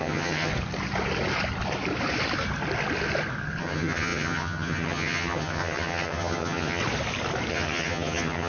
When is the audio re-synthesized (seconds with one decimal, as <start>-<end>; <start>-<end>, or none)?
0.0-0.5; 3.6-6.8; 7.5-8.5

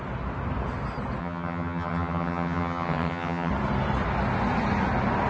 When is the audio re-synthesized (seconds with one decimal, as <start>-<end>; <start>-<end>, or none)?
1.2-3.5